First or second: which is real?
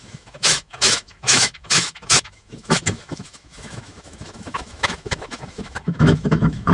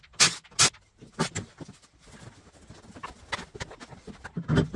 second